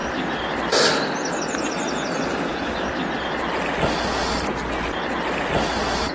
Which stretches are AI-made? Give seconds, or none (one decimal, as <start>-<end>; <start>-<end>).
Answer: 0.0-1.6; 2.5-3.4